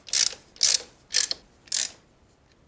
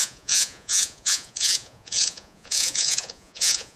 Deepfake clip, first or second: second